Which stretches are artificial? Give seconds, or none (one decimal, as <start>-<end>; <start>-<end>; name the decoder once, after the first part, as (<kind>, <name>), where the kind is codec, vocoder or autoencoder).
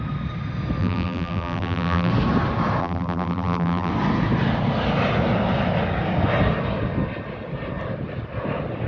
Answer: 0.8-2.1 (vocoder, BigVGAN v2); 2.8-3.9